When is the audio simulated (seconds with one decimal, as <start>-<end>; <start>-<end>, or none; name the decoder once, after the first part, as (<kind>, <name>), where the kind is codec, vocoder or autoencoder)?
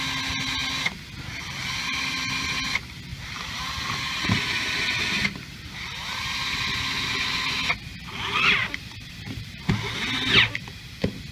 3.1-5.8 (vocoder, BigVGAN v2); 8.6-9.7